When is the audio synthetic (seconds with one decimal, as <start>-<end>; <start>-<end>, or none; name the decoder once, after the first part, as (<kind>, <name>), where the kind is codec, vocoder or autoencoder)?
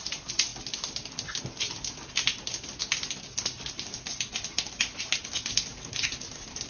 none